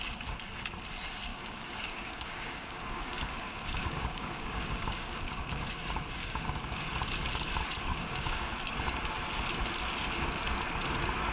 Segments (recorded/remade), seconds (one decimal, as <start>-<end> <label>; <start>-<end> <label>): 0.0-1.3 recorded; 1.3-5.7 remade; 5.7-6.2 recorded; 6.2-6.9 remade; 6.9-7.9 recorded; 7.9-8.5 remade; 8.5-11.3 recorded

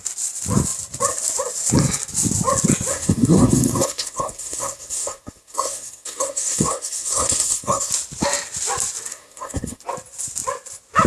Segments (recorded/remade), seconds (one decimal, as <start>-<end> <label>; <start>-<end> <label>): 0.0-2.9 recorded; 2.9-7.9 remade; 7.9-9.1 recorded; 9.1-9.8 remade; 9.8-11.1 recorded

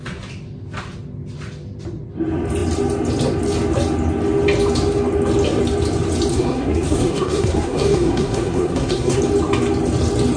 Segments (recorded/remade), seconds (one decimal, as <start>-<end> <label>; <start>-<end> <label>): 0.0-6.3 recorded; 6.3-9.2 remade; 9.2-10.4 recorded

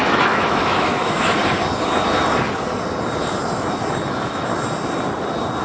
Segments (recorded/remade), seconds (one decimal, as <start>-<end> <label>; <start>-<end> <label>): 0.0-1.4 remade; 1.4-4.1 recorded; 4.1-4.5 remade; 4.5-5.6 recorded

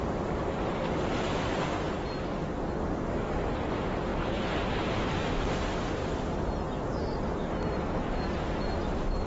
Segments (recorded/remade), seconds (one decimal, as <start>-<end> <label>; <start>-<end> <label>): 0.0-4.1 recorded; 4.1-5.4 remade; 5.4-9.3 recorded

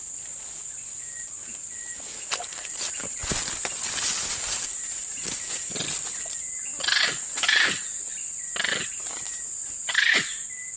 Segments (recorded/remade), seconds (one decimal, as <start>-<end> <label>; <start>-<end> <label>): 0.0-3.2 remade; 3.2-4.3 recorded; 4.3-10.8 remade